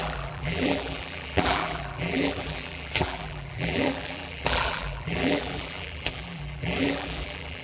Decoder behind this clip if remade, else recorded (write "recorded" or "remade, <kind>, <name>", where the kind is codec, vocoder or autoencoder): remade, vocoder, BigVGAN v2